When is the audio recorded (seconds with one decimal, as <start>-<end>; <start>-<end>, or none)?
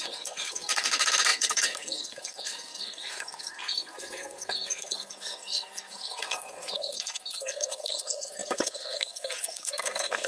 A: none